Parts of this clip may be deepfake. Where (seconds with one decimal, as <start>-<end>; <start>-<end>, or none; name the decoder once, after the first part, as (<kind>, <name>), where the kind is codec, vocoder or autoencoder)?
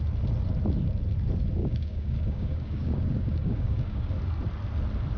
1.6-4.1 (codec, DAC)